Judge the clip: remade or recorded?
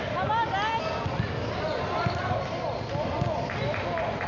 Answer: recorded